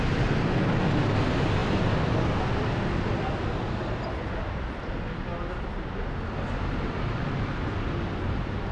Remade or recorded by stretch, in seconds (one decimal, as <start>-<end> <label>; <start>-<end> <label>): 0.0-8.7 recorded